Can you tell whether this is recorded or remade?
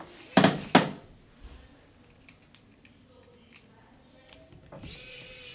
recorded